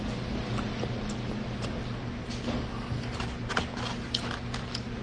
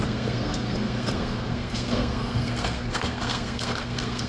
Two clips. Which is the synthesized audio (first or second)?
second